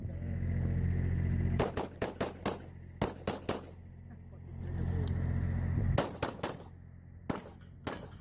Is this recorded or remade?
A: recorded